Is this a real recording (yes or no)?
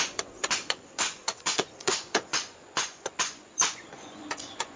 no